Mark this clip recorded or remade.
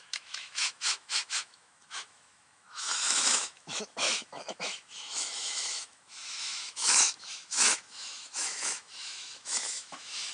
remade